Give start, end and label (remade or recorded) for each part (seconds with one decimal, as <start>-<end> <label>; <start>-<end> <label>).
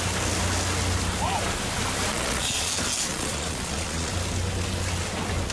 0.0-2.1 recorded; 2.1-2.7 remade; 2.7-3.1 recorded; 3.1-4.1 remade; 4.1-5.5 recorded